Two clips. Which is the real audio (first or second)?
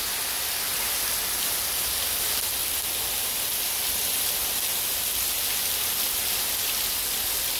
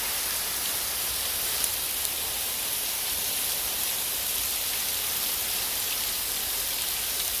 first